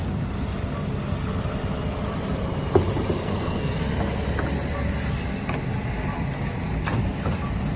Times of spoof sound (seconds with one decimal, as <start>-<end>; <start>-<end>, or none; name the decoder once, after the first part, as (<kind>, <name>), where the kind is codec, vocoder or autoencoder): 3.2-3.8 (codec, SNAC)